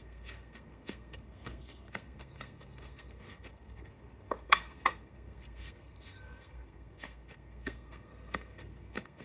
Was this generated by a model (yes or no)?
yes